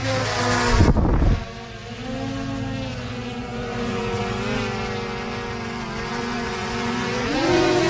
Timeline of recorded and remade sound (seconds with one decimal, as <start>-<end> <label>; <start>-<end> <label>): 0.0-2.9 recorded; 2.9-4.2 remade; 4.2-6.2 recorded; 6.2-7.9 remade